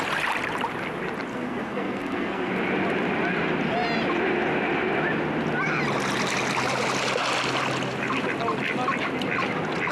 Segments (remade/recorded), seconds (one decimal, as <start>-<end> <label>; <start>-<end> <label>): 0.0-1.3 recorded; 1.3-2.5 remade; 2.5-9.9 recorded